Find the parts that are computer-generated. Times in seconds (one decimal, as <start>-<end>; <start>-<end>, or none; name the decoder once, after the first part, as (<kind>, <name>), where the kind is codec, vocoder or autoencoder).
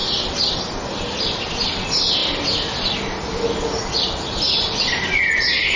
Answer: none